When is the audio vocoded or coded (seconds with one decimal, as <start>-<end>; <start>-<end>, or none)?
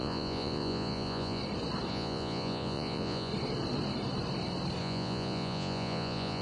0.0-1.4; 1.9-3.3; 4.8-6.4